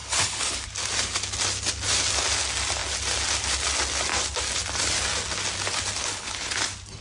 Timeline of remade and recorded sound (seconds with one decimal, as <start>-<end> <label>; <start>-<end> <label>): 0.0-0.7 remade; 0.7-6.0 recorded; 6.0-6.6 remade; 6.6-7.0 recorded